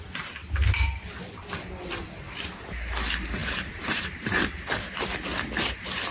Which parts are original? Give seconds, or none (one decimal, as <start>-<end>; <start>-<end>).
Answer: 0.0-6.1